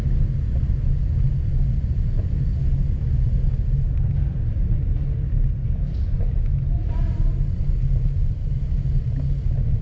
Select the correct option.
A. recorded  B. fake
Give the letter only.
A